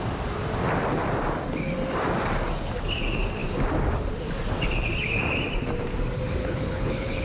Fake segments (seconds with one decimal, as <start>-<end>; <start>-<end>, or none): 6.4-7.2